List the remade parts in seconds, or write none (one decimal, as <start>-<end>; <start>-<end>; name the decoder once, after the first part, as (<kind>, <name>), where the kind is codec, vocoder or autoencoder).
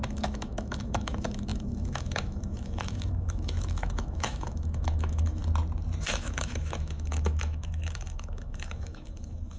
0.0-5.4 (autoencoder, DAC-VAE); 6.0-9.6